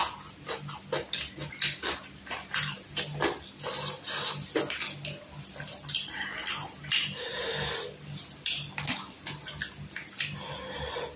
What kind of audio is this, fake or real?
real